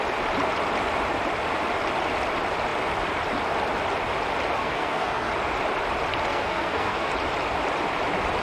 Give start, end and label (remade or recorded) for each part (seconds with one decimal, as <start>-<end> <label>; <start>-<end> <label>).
0.0-4.6 recorded; 4.6-5.3 remade; 5.3-6.3 recorded; 6.3-7.1 remade; 7.1-8.4 recorded